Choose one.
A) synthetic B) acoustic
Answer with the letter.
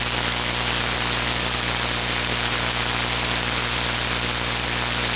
B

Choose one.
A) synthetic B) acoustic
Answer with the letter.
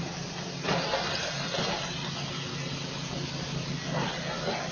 B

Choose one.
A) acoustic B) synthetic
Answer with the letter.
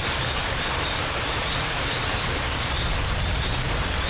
A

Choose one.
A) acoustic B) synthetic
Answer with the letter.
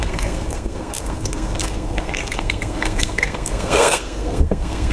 B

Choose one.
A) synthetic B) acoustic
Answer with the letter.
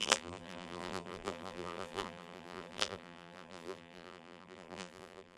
A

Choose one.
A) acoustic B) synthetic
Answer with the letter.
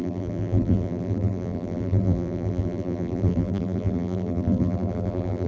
B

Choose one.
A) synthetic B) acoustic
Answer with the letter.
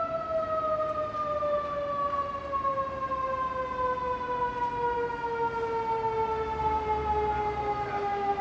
B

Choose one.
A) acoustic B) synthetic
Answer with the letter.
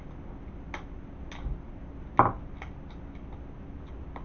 A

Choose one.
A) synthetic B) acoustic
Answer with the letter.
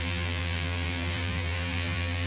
A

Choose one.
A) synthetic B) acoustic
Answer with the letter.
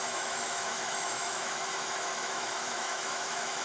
A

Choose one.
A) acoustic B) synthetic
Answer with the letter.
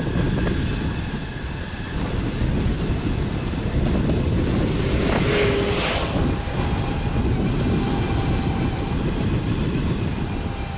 A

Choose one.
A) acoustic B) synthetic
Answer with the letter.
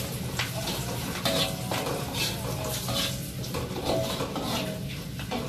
A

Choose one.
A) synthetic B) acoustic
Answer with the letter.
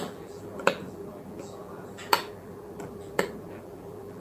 A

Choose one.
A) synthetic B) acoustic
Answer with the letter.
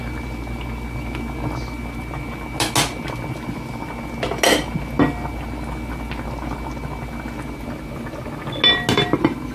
B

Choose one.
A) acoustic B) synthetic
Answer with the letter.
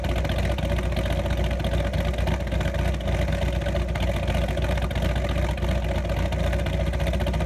A